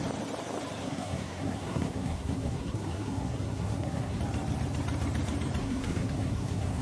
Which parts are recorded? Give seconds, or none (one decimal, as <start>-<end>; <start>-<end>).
0.0-0.8; 4.2-5.6